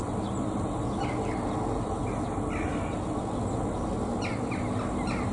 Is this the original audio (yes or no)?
yes